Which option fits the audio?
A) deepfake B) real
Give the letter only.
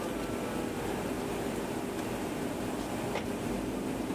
B